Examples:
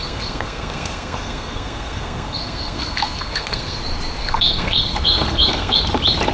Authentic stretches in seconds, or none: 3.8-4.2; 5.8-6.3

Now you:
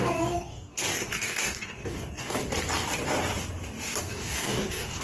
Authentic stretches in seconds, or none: 2.4-4.0

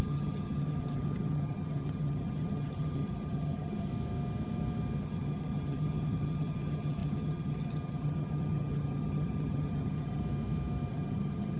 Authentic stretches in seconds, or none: 3.9-5.0; 10.2-10.9

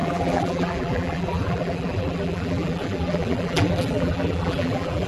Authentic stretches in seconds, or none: none

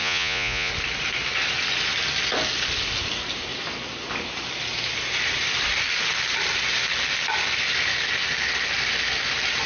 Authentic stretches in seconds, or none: 0.7-9.7

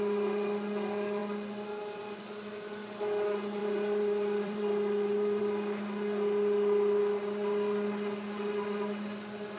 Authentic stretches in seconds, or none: 0.0-3.6; 5.4-9.6

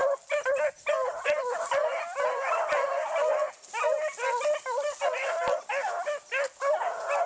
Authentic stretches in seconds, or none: 0.0-7.3

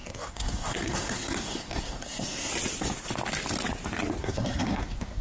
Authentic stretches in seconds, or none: 2.5-4.2